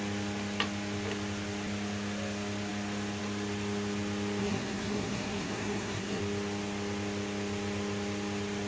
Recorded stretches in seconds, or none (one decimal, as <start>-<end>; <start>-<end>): 0.0-4.4; 6.2-8.7